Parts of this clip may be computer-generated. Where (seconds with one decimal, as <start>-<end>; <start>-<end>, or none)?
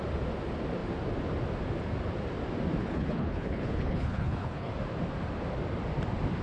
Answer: 2.8-4.7